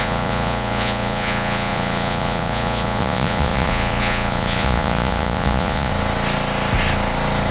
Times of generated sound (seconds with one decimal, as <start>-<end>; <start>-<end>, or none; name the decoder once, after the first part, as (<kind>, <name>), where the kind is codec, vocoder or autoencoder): 0.0-5.9 (vocoder, Vocos)